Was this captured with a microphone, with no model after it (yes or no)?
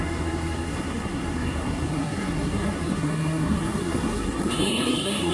no